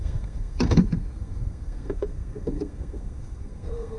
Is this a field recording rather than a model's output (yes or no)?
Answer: no